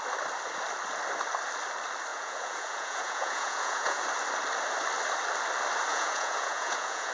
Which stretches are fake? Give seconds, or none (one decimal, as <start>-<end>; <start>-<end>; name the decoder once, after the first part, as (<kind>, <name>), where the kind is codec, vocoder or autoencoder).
2.1-4.0 (vocoder, Vocos); 5.9-7.1